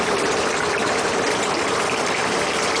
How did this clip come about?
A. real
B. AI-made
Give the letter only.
B